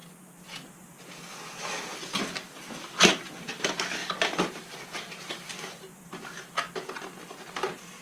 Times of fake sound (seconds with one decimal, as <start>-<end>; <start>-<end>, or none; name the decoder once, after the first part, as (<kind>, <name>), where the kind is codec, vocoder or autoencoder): none